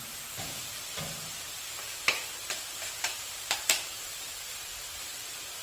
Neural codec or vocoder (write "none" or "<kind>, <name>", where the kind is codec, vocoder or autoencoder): vocoder, BigVGAN v2